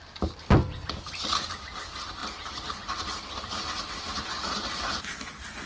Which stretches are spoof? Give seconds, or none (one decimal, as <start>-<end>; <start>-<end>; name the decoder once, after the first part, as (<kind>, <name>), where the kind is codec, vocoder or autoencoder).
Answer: none